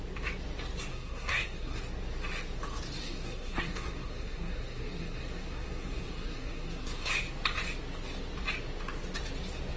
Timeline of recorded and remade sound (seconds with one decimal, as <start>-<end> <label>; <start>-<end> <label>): 0.0-0.9 recorded; 0.9-1.8 remade; 1.8-3.0 recorded; 3.0-7.1 remade; 7.1-9.8 recorded